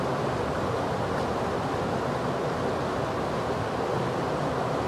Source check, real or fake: real